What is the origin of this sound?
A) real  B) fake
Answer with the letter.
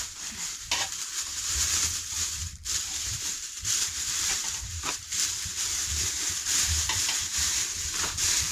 B